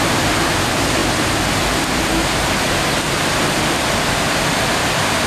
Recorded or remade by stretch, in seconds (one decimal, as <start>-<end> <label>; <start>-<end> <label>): 0.0-5.3 remade